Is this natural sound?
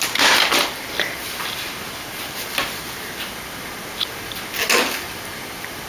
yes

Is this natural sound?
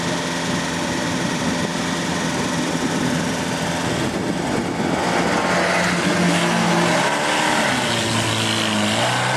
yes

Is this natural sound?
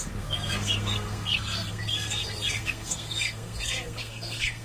no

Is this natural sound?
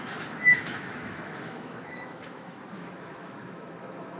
no